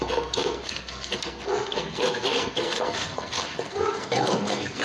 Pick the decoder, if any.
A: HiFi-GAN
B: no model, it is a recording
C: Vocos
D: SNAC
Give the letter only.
D